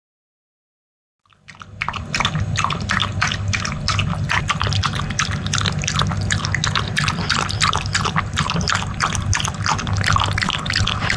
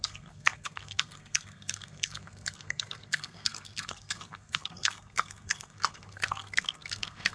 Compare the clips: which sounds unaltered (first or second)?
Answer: first